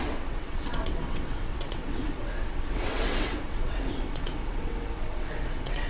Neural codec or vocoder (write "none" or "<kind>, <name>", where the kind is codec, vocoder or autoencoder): vocoder, WaveNeXt